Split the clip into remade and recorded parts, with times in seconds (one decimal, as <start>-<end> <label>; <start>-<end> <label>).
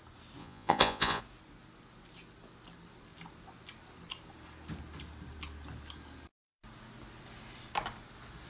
0.0-0.4 recorded; 0.4-1.2 remade; 1.2-8.5 recorded